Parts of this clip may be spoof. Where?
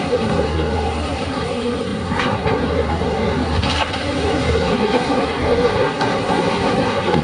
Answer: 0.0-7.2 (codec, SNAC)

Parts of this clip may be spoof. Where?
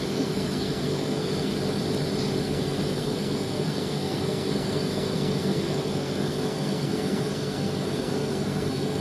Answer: 0.0-1.5 (codec, SNAC); 2.4-9.0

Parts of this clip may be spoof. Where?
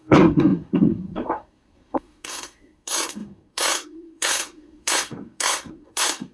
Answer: 0.0-6.3 (codec, SNAC)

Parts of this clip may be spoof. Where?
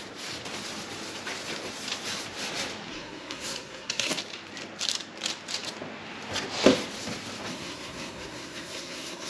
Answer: 2.9-4.1 (codec, SNAC); 7.5-9.3